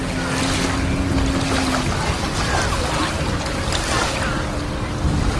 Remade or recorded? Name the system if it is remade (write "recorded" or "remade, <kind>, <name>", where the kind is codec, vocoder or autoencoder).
recorded